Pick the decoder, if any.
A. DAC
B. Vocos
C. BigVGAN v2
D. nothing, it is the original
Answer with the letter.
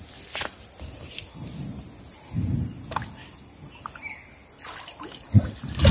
D